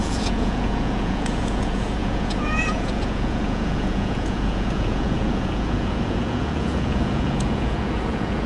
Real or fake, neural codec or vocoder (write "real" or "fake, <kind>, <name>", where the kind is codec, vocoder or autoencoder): fake, vocoder, Vocos